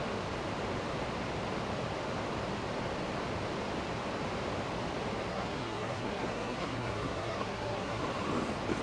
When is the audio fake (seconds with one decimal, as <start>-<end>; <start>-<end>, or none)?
5.3-8.0